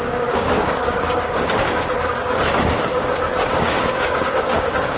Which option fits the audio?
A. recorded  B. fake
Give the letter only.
B